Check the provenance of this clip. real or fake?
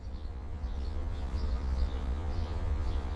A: fake